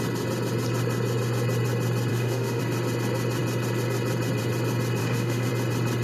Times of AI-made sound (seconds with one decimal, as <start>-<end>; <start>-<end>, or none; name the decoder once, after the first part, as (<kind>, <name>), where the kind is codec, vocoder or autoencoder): 2.1-2.6 (autoencoder, DAC-VAE); 5.0-5.5